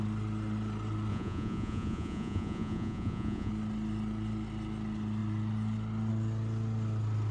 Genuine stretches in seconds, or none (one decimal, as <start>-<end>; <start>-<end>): 0.0-1.1; 3.5-7.3